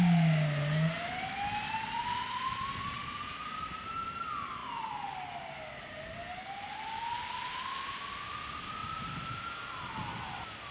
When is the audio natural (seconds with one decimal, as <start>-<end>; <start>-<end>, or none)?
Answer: 0.0-10.7